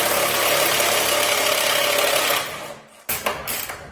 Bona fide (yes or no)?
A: yes